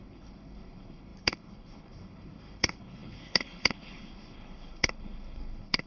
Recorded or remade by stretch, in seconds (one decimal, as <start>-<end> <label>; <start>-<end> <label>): 0.0-5.9 remade